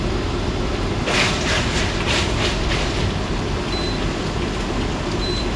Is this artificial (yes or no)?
yes